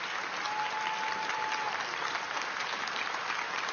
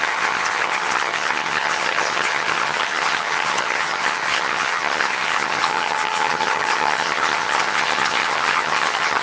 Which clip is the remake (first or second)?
second